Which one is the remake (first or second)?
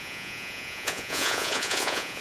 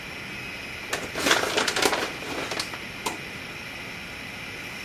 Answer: first